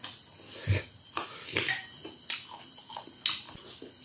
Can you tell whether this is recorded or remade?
recorded